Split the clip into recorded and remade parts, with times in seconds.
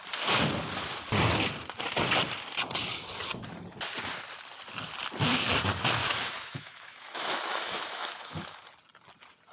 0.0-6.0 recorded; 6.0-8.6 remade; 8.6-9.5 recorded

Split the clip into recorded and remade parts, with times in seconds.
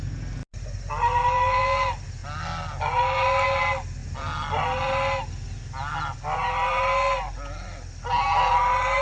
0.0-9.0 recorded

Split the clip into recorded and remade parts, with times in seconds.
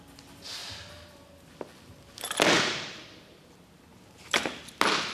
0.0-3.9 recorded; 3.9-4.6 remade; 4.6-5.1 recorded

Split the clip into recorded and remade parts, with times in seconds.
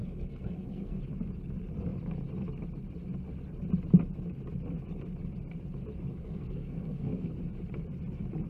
0.0-1.0 remade; 1.0-6.1 recorded; 6.1-7.3 remade; 7.3-8.5 recorded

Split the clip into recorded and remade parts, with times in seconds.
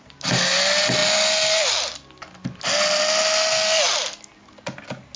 0.0-5.2 recorded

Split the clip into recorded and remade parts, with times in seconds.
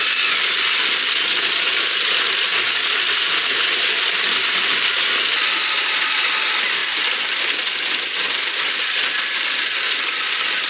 0.0-6.8 recorded; 6.8-7.4 remade; 7.4-10.7 recorded